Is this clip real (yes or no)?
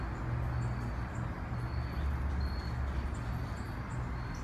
yes